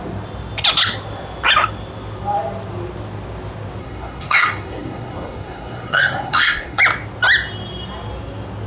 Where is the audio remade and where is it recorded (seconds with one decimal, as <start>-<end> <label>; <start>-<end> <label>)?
0.0-3.8 recorded; 3.8-6.8 remade; 6.8-8.7 recorded